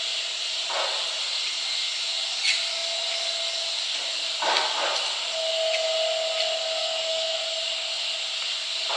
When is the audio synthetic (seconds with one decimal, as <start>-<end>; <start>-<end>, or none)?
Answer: 6.8-7.4